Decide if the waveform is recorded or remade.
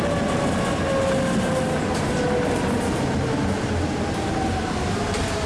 recorded